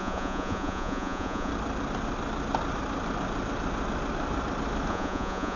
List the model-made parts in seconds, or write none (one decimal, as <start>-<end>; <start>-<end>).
0.0-1.5; 4.9-5.6